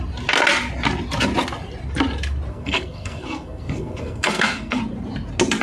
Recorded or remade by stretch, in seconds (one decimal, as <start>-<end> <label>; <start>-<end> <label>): 0.0-2.5 recorded; 2.5-4.8 remade; 4.8-5.6 recorded